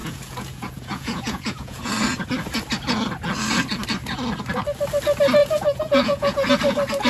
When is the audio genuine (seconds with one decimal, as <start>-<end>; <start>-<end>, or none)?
1.9-5.4; 6.5-7.1